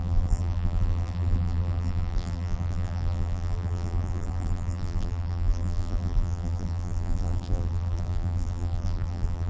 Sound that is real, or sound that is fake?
fake